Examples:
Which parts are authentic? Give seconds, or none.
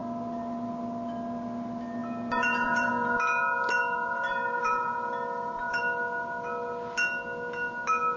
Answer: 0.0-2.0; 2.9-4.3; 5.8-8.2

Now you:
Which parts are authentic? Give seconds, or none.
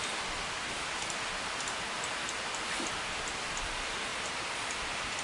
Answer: 0.0-5.2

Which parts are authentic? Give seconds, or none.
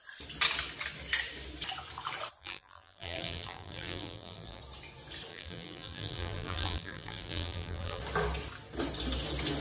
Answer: 0.0-2.4; 4.6-5.3; 8.0-9.6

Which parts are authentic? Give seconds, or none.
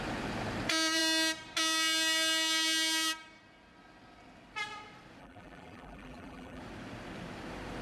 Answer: 0.0-5.2; 6.6-7.8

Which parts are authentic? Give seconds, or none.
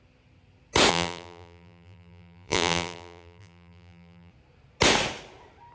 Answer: 0.0-0.9; 4.3-5.7